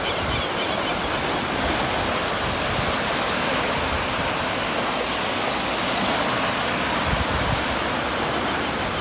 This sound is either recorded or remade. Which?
recorded